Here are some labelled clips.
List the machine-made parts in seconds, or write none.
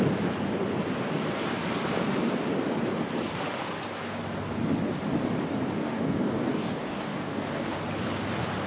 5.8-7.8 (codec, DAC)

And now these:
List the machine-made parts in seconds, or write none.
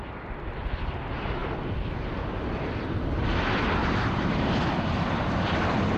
3.8-4.5 (vocoder, BigVGAN v2)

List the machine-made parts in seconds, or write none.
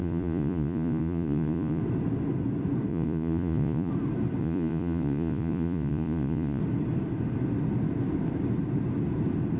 0.0-1.8 (vocoder, Vocos); 2.9-3.9; 4.4-6.6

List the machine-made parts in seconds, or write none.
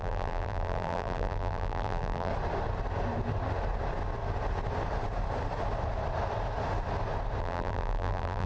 0.0-2.3 (vocoder, BigVGAN v2); 7.4-8.5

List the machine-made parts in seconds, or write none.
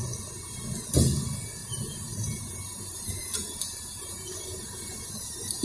1.6-5.0 (vocoder, BigVGAN v2)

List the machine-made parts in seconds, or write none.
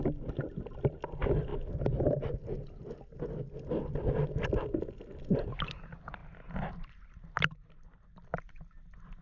none